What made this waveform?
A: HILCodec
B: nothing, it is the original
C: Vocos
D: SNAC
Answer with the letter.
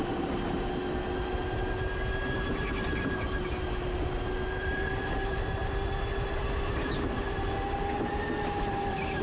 B